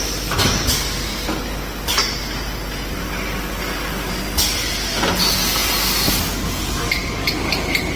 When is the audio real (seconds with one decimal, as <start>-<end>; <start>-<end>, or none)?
0.0-8.0